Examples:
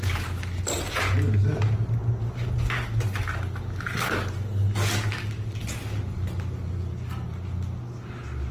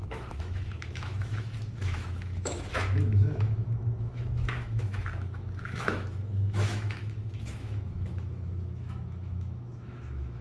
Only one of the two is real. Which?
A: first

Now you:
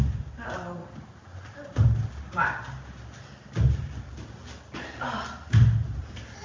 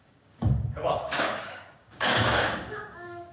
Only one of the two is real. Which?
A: first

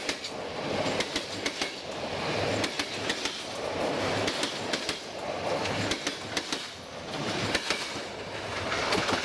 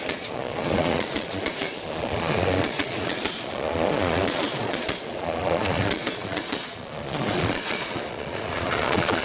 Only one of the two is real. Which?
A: first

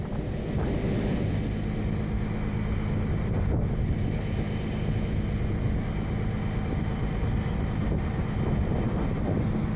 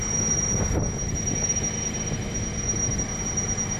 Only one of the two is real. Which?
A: first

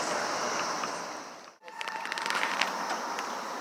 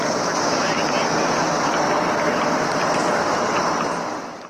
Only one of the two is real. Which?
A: first